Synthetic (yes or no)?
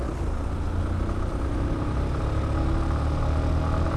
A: no